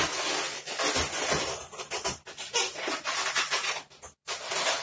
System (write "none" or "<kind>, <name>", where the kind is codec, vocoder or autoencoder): none